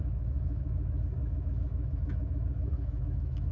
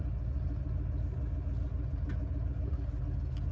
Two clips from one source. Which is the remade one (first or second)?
first